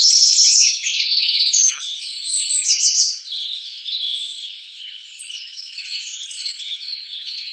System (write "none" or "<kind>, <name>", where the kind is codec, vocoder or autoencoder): codec, HILCodec